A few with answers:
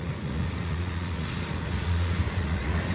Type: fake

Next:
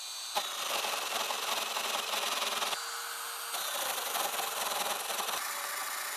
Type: real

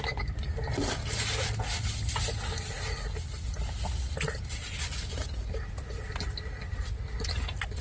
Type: real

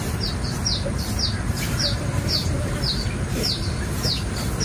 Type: fake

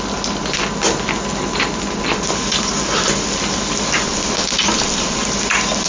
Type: real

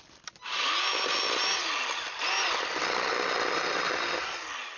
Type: real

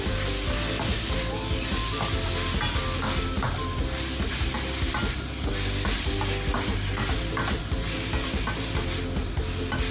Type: real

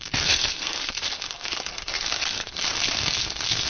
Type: fake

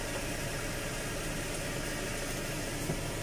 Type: real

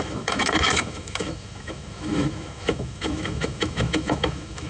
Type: fake